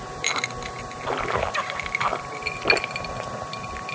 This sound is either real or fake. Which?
real